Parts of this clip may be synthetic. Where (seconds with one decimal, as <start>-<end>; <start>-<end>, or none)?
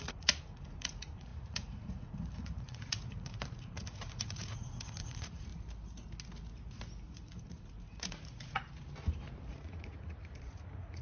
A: 0.0-5.5; 7.0-8.6; 9.5-11.0